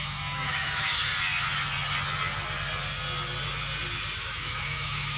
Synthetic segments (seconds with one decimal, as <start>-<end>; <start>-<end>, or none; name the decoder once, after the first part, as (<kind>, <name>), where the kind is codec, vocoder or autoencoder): 0.0-1.1 (autoencoder, DAC-VAE); 4.2-5.2